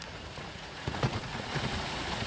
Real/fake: fake